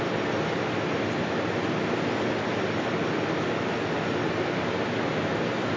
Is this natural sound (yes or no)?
yes